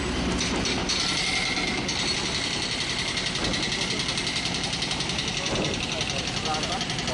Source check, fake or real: real